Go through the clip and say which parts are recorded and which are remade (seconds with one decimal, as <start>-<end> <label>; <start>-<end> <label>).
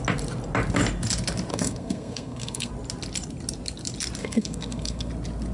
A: 0.0-1.5 recorded; 1.5-2.7 remade; 2.7-4.2 recorded; 4.2-5.1 remade; 5.1-5.5 recorded